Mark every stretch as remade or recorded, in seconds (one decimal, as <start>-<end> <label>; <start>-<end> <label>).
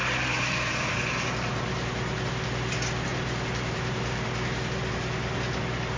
0.0-0.7 remade; 0.7-3.1 recorded; 3.1-4.9 remade; 4.9-6.0 recorded